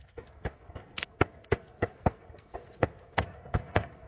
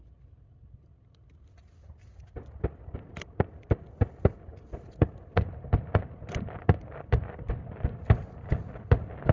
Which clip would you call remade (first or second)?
first